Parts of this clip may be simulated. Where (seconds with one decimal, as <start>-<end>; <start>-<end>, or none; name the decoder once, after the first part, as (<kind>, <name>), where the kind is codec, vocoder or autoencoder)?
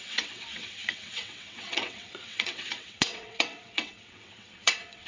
0.0-5.1 (vocoder, WaveNeXt)